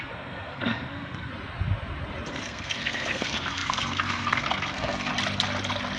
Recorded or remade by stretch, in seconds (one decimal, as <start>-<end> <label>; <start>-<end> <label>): 0.0-1.3 remade; 1.3-2.3 recorded; 2.3-5.1 remade; 5.1-6.0 recorded